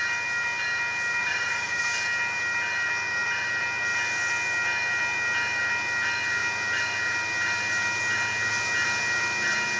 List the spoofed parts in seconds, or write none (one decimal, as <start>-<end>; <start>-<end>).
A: 1.2-1.8

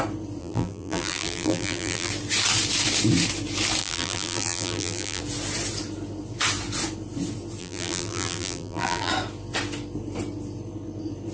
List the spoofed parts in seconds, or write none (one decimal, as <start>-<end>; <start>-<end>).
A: 0.4-2.1; 3.8-5.2; 7.6-9.1

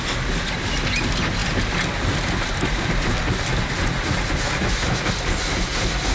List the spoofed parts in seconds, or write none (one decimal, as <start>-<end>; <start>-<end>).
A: none

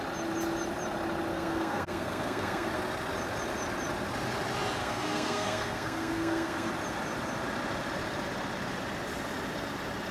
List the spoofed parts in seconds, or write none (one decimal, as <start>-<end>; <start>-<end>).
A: 1.3-2.8; 4.8-6.7

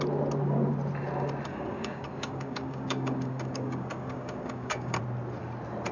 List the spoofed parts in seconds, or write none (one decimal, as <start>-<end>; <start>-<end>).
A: 1.5-5.0

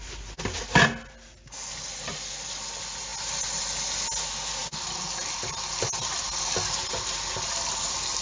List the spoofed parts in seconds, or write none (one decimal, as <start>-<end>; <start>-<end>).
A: none